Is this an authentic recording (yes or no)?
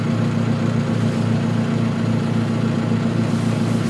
yes